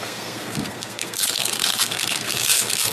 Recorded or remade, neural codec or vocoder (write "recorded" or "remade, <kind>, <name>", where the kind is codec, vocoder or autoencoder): remade, codec, SNAC